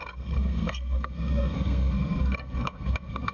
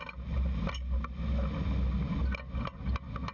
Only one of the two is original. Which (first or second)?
second